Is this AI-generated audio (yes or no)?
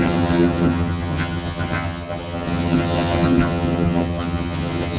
yes